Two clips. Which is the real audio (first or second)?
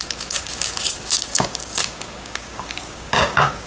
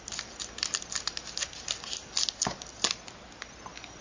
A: second